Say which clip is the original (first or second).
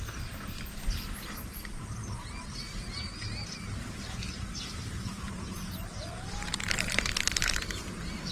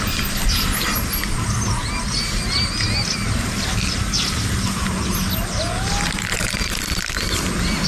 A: second